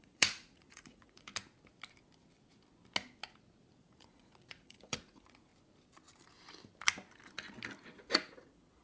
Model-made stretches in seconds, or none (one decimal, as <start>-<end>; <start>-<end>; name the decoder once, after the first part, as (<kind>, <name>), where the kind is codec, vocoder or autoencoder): 0.0-1.3 (vocoder, Vocos); 3.8-5.5; 8.0-8.8

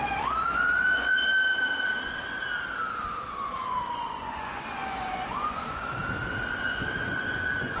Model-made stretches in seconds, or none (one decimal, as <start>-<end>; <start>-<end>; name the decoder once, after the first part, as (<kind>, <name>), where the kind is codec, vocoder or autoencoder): 0.0-1.3 (vocoder, Vocos); 2.9-6.0; 6.6-7.8

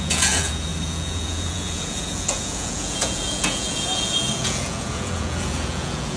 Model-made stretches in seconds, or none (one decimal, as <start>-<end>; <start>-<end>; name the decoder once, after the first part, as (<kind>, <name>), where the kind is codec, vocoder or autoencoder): 0.0-6.2 (vocoder, Vocos)

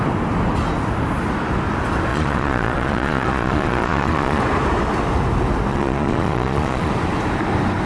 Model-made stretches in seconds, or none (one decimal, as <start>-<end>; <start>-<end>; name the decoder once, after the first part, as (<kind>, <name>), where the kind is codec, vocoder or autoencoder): 2.1-4.4 (vocoder, Vocos); 5.7-6.9

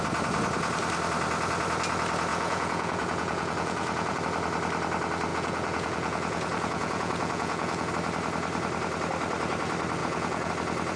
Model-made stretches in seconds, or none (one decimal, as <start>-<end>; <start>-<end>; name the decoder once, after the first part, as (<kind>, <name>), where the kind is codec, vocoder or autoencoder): 2.3-4.2 (vocoder, Vocos); 5.3-7.9; 10.0-10.5